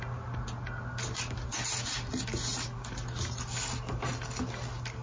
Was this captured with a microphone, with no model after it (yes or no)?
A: yes